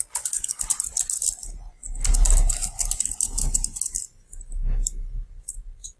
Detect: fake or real real